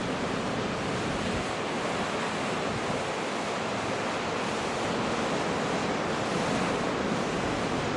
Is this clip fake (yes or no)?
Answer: no